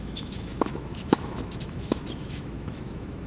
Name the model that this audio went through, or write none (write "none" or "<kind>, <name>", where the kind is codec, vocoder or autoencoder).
autoencoder, DAC-VAE